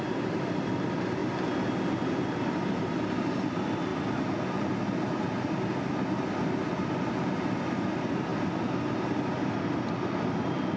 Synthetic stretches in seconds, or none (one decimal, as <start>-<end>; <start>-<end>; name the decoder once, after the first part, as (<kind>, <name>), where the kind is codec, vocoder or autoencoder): 0.0-1.2 (vocoder, BigVGAN v2); 1.8-3.9; 7.5-8.3; 9.4-10.8